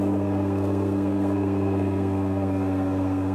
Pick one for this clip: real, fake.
fake